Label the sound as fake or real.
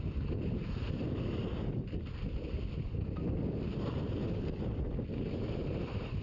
real